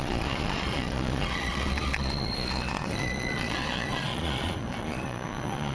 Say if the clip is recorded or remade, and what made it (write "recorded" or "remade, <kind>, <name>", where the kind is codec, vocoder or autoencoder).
remade, vocoder, Vocos